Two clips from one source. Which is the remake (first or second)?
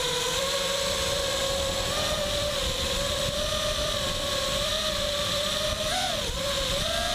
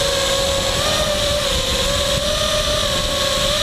first